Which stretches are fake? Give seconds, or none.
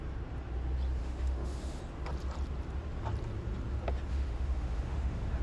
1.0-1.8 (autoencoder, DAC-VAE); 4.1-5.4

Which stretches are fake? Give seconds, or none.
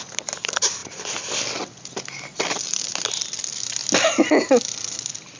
none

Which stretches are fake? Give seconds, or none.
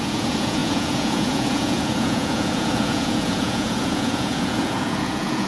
0.0-5.5 (vocoder, Vocos)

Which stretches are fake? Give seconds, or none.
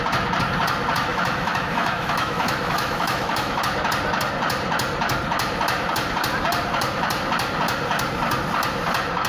1.1-3.6 (autoencoder, DAC-VAE)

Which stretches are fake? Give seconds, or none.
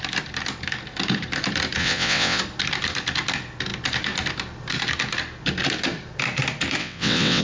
1.8-2.4 (vocoder, WaveNeXt); 6.8-7.4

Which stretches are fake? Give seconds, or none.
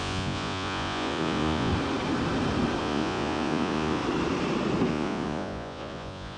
0.0-1.7 (vocoder, Vocos); 2.8-4.0; 4.9-6.4